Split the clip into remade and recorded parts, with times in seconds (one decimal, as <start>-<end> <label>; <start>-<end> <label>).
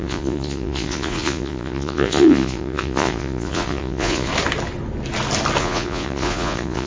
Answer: 0.0-4.3 remade; 4.3-5.6 recorded; 5.6-6.9 remade